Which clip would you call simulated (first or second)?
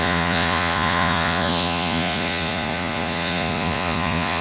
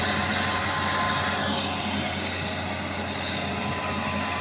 first